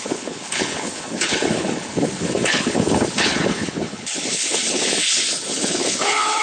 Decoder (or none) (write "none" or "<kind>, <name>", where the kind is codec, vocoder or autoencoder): codec, HILCodec